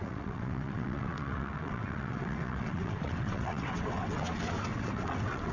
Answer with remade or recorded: remade